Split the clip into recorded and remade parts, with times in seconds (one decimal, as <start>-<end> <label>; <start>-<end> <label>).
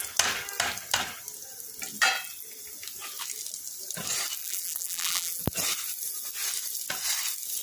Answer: 0.0-4.4 recorded; 4.4-5.4 remade; 5.4-7.6 recorded